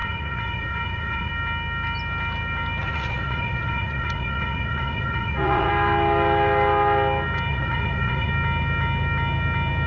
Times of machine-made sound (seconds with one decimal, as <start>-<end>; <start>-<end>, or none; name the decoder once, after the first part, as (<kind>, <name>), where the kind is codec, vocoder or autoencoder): 0.0-1.3 (vocoder, Vocos); 2.8-5.7; 7.5-8.3